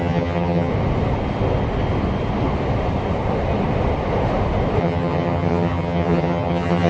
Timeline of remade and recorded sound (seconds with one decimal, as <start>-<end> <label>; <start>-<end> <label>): 0.0-0.7 remade; 0.7-4.8 recorded; 4.8-6.9 remade

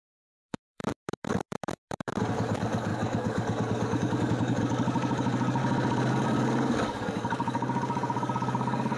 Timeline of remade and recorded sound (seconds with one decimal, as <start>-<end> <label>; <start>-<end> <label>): 0.0-0.8 remade; 0.8-2.3 recorded; 2.3-5.6 remade; 5.6-6.1 recorded; 6.1-9.0 remade

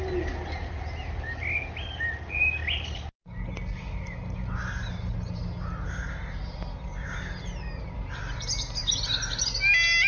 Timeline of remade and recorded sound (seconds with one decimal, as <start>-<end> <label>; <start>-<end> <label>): 0.0-10.1 recorded

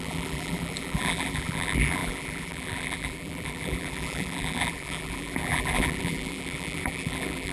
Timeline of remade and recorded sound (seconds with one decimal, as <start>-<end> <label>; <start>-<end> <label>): 0.0-7.5 remade

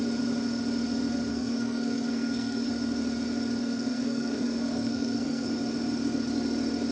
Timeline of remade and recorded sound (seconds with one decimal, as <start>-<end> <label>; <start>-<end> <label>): 0.0-1.3 recorded; 1.3-2.7 remade; 2.7-3.6 recorded; 3.6-5.5 remade; 5.5-6.9 recorded

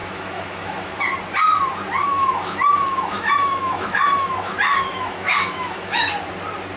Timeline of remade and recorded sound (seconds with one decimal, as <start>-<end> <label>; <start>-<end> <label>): 0.0-1.0 remade; 1.0-2.0 recorded; 2.0-6.1 remade; 6.1-6.8 recorded